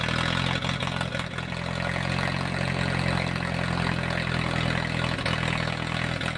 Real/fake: real